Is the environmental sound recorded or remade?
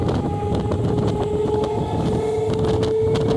recorded